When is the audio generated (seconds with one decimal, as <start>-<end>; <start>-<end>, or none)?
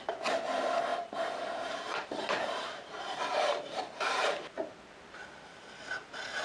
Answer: 0.9-4.4